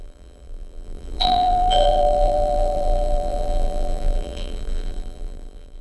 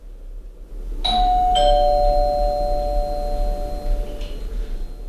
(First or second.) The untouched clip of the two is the second